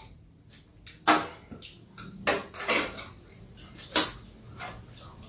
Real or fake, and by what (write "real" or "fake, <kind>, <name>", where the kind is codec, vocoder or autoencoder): real